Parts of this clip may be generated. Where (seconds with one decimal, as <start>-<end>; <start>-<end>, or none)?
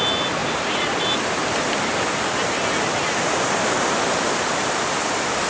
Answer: 0.4-3.0